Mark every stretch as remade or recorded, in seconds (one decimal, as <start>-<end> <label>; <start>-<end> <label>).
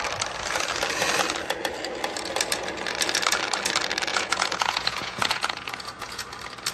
0.0-4.1 recorded; 4.1-6.2 remade; 6.2-6.7 recorded